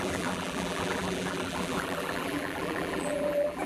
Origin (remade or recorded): remade